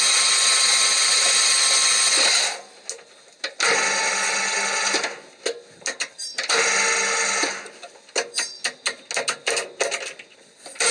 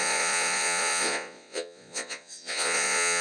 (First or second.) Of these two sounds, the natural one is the first